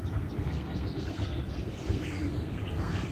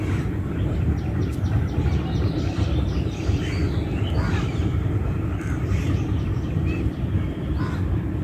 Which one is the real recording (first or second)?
second